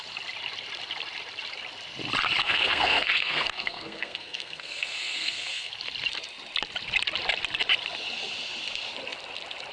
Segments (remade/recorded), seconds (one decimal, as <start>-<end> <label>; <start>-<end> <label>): 0.0-2.4 recorded; 2.4-5.7 remade; 5.7-9.7 recorded

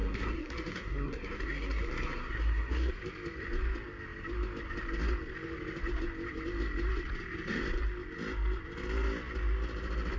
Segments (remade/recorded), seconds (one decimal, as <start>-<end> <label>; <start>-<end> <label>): 0.0-2.9 remade; 2.9-10.2 recorded

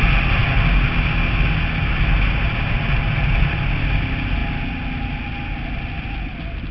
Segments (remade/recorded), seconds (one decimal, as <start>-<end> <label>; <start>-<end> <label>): 0.0-6.7 recorded

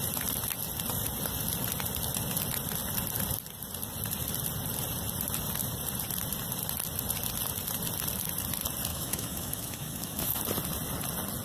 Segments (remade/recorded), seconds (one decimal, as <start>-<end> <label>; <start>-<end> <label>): 0.0-8.9 recorded; 8.9-10.4 remade; 10.4-11.4 recorded

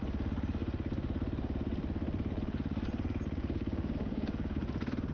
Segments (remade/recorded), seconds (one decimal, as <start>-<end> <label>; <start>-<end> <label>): 0.0-3.4 recorded; 3.4-4.6 remade; 4.6-5.1 recorded

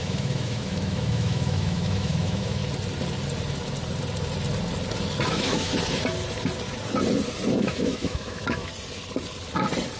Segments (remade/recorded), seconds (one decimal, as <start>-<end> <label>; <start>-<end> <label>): 0.0-2.6 remade; 2.6-5.3 recorded; 5.3-5.7 remade; 5.7-7.6 recorded; 7.6-8.7 remade; 8.7-10.0 recorded